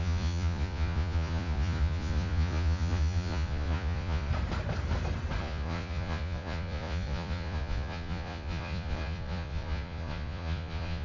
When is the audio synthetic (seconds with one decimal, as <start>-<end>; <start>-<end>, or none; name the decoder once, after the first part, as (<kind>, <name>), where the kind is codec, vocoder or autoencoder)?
0.0-4.3 (vocoder, Vocos); 5.4-11.0